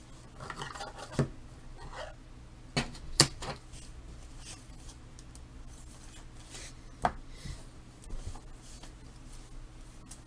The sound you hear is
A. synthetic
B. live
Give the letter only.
B